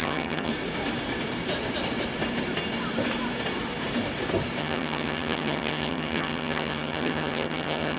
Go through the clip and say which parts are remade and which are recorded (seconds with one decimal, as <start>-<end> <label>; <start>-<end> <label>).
0.0-0.5 remade; 0.5-4.6 recorded; 4.6-8.0 remade

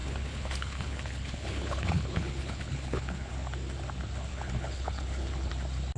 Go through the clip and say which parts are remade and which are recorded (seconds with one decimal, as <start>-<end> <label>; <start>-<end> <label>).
0.0-3.3 remade; 3.3-4.3 recorded; 4.3-5.5 remade; 5.5-6.0 recorded

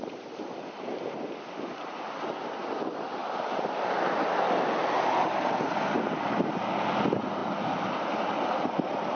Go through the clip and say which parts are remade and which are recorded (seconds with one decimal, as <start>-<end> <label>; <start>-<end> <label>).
0.0-9.2 recorded

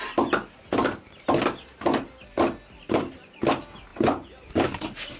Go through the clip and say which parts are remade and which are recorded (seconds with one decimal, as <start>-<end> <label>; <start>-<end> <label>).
0.0-5.2 recorded

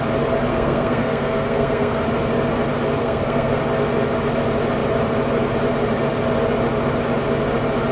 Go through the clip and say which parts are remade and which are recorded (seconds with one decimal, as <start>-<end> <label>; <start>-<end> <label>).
0.0-0.5 recorded; 0.5-2.0 remade; 2.0-3.0 recorded; 3.0-3.6 remade; 3.6-7.9 recorded

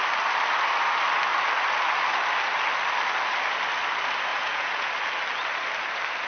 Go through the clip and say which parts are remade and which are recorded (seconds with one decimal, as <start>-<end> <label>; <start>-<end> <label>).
0.0-4.3 recorded; 4.3-4.9 remade; 4.9-6.3 recorded

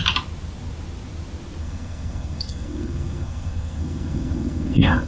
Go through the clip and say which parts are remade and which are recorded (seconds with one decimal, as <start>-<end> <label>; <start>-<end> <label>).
0.0-1.6 recorded; 1.6-5.1 remade

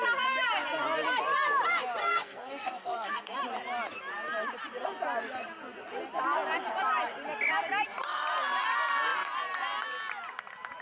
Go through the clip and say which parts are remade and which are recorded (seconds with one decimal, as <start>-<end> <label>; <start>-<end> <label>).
0.0-2.0 recorded; 2.0-3.4 remade; 3.4-10.8 recorded